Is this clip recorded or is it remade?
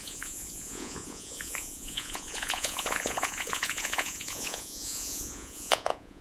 remade